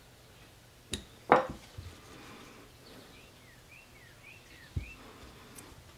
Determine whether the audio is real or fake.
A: real